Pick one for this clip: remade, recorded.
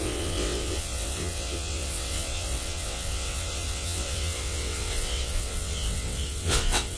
remade